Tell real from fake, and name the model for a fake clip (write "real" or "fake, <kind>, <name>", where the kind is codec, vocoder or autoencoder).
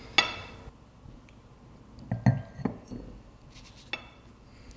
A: real